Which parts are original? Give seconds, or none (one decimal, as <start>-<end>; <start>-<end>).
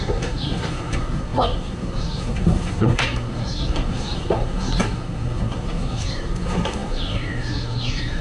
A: none